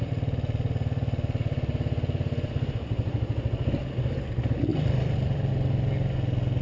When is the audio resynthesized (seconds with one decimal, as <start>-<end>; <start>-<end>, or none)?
4.7-5.5